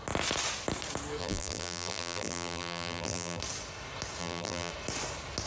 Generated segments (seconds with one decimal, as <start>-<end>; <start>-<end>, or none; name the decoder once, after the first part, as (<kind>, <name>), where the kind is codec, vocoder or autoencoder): 1.2-3.4 (vocoder, BigVGAN v2); 4.2-4.7